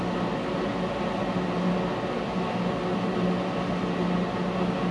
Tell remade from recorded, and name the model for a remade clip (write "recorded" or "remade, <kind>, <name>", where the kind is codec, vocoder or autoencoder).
recorded